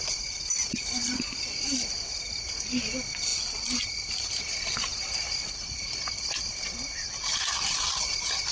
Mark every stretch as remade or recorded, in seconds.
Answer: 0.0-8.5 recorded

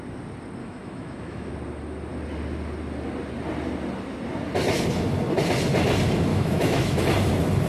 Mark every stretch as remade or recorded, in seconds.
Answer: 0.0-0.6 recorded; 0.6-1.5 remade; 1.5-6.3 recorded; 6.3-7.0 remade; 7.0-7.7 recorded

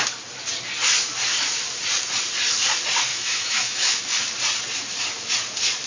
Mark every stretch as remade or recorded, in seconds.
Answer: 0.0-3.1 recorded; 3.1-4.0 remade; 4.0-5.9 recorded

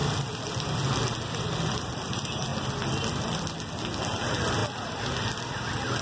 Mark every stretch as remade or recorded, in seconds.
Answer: 0.0-6.0 recorded

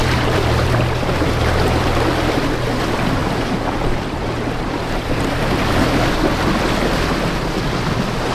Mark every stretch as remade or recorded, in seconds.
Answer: 0.0-2.4 remade; 2.4-3.2 recorded; 3.2-5.7 remade; 5.7-8.3 recorded

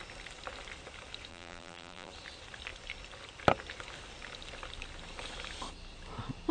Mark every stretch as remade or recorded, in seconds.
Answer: 0.0-1.3 recorded; 1.3-2.1 remade; 2.1-6.5 recorded

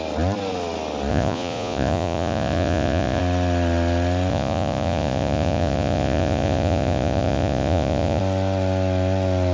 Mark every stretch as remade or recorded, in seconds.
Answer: 0.0-1.1 recorded; 1.1-3.2 remade; 3.2-4.3 recorded; 4.3-8.2 remade; 8.2-9.5 recorded

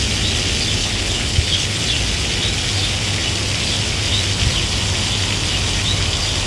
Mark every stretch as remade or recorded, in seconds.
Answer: 0.0-0.8 recorded; 0.8-1.8 remade; 1.8-6.5 recorded